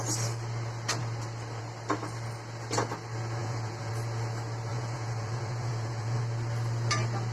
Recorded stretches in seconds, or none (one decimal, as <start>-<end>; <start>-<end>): 0.0-3.4; 3.9-4.7; 6.2-7.3